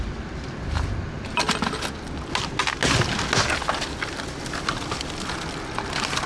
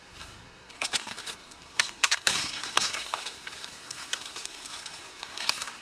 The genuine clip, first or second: first